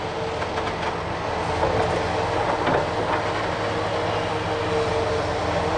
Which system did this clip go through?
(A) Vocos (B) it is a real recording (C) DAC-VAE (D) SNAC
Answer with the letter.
B